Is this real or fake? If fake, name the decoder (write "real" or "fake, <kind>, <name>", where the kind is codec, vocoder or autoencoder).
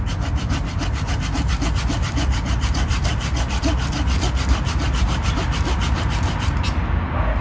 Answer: real